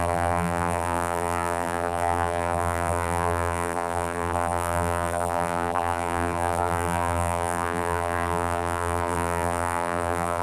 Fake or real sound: fake